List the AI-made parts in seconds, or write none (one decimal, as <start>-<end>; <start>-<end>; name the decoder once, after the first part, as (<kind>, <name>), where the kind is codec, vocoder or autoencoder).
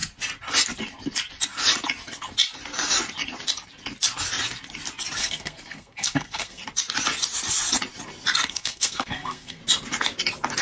5.2-6.6 (codec, SNAC); 8.5-9.6